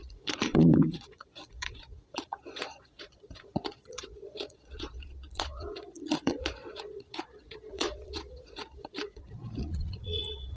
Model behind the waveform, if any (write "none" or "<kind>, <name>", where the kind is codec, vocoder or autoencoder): vocoder, Vocos